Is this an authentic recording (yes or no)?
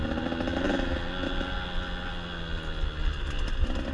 yes